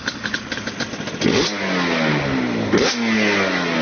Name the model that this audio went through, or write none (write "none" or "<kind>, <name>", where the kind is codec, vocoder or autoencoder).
none